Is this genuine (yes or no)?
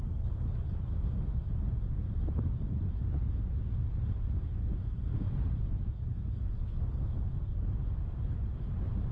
yes